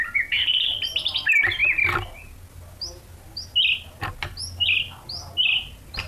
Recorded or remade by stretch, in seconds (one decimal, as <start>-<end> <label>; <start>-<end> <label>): 0.0-6.1 recorded